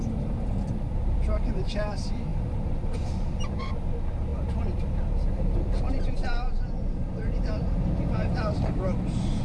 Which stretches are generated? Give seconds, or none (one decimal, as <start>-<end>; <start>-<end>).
0.0-9.4